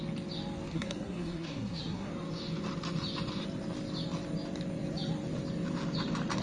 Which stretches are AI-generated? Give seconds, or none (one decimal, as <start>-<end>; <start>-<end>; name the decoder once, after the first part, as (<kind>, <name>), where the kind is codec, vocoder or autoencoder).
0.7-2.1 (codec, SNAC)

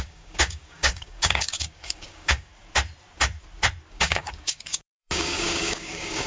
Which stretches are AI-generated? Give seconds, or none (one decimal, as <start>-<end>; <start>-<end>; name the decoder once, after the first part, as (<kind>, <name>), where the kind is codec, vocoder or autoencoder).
0.0-2.5 (codec, DAC); 3.9-6.3

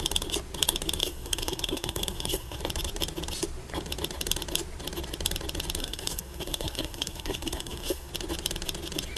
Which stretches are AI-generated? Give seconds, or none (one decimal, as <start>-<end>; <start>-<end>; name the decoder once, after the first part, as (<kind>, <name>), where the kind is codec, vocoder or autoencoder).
1.0-2.6 (codec, SNAC); 5.8-8.1